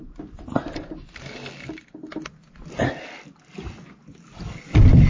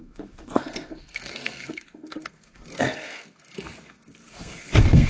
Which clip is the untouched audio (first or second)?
first